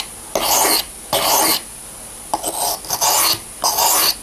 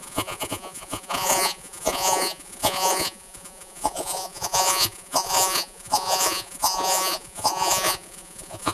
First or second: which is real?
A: first